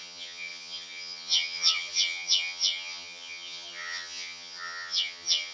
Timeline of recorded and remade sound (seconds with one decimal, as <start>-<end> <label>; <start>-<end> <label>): 0.0-5.5 remade

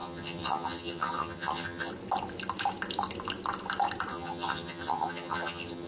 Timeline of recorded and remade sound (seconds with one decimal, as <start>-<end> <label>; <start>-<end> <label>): 0.0-1.9 remade; 1.9-4.1 recorded; 4.1-5.9 remade

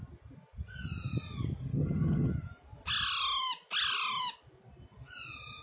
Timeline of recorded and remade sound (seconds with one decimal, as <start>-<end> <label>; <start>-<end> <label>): 0.0-1.6 recorded; 1.6-2.3 remade; 2.3-5.6 recorded

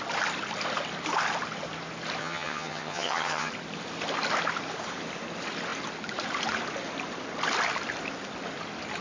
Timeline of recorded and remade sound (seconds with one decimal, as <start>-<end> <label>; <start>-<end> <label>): 0.0-2.2 recorded; 2.2-3.5 remade; 3.5-9.0 recorded

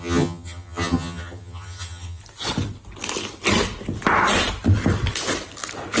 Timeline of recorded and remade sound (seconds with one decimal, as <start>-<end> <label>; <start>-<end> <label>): 0.0-2.2 remade; 2.2-6.0 recorded